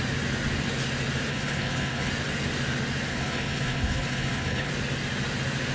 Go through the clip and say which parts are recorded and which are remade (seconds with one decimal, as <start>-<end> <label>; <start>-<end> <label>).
0.0-1.3 recorded; 1.3-2.1 remade; 2.1-3.1 recorded; 3.1-4.7 remade; 4.7-5.7 recorded